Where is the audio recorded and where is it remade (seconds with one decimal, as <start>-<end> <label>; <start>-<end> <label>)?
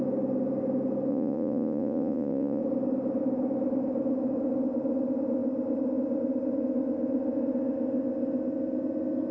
0.0-1.1 recorded; 1.1-2.6 remade; 2.6-9.3 recorded